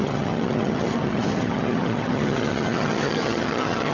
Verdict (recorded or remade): remade